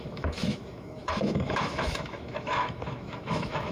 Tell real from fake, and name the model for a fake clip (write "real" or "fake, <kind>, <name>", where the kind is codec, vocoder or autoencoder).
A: fake, autoencoder, DAC-VAE